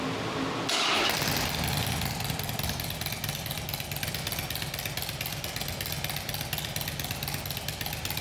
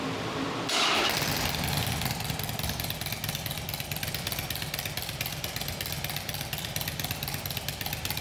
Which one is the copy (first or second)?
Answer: second